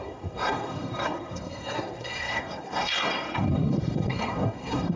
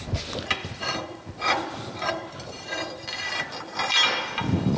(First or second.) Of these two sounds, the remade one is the first